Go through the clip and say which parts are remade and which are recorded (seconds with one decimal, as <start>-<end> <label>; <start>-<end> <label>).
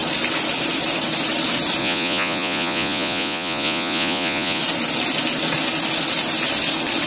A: 0.0-1.8 recorded; 1.8-4.6 remade; 4.6-7.1 recorded